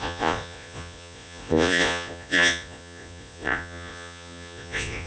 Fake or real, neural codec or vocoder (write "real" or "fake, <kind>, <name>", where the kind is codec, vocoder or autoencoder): fake, vocoder, Vocos